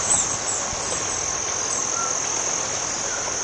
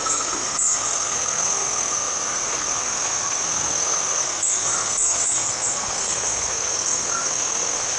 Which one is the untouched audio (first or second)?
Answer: first